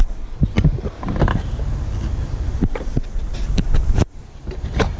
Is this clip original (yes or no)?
yes